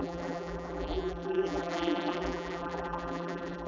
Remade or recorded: remade